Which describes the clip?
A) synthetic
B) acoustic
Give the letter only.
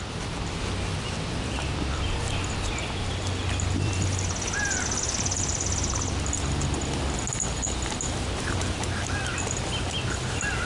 B